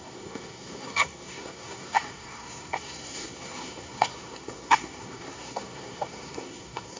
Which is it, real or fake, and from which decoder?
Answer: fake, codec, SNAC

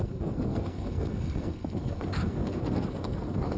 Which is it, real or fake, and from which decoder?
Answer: fake, codec, SNAC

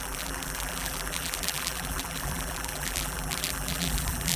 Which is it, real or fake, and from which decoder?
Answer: fake, vocoder, BigVGAN v2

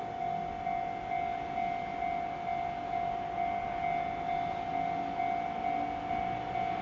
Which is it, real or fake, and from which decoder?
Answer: real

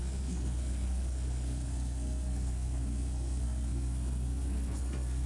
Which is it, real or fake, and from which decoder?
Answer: fake, codec, SNAC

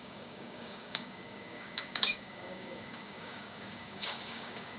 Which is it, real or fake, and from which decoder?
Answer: fake, codec, DAC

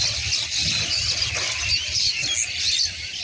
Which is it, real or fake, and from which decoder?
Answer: real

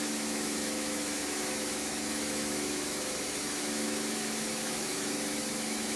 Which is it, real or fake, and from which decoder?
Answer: fake, autoencoder, DAC-VAE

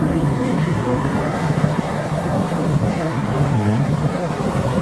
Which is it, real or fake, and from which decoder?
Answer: fake, codec, SNAC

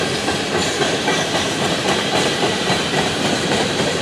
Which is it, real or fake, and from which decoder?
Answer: fake, vocoder, BigVGAN v2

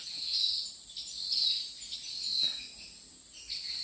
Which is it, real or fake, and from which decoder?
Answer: real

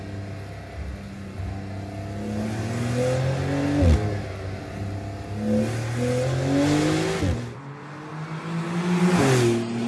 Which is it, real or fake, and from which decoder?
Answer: real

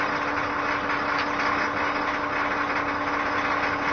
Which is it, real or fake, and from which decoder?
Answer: real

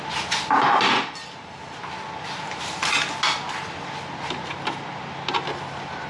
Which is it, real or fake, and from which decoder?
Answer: real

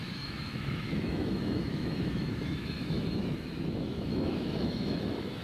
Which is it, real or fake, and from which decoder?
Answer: fake, autoencoder, DAC-VAE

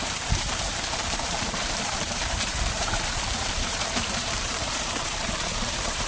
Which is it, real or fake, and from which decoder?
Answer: fake, vocoder, BigVGAN v2